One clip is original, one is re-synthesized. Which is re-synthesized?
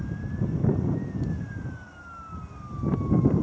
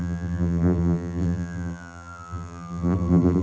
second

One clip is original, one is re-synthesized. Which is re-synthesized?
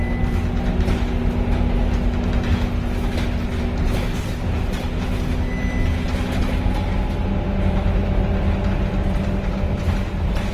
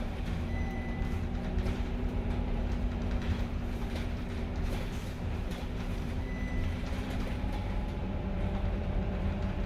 second